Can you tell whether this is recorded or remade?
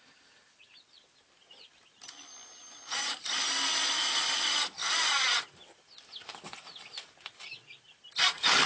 recorded